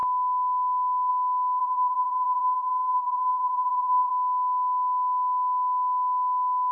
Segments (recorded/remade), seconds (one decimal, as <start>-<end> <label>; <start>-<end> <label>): 0.0-1.6 recorded; 1.6-4.1 remade; 4.1-6.7 recorded